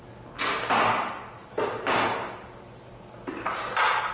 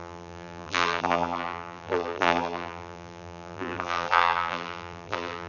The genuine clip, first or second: first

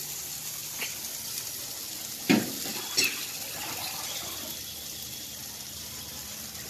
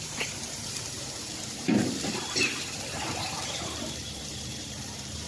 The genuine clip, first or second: first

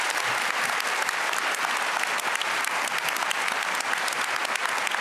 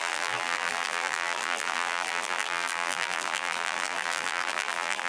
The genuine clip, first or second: first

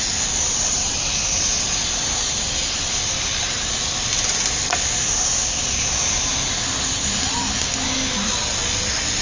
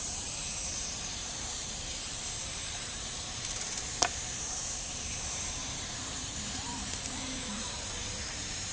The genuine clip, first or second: first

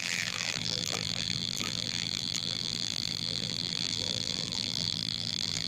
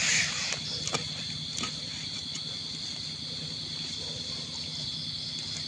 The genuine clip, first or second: second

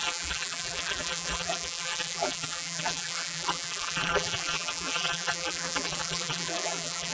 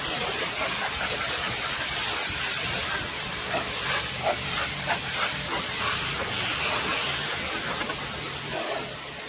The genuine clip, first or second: second